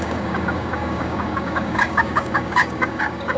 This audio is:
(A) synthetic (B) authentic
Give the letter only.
A